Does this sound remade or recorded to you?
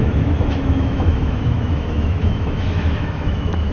remade